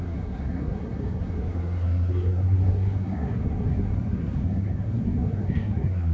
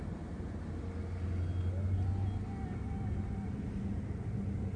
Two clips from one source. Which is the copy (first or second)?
first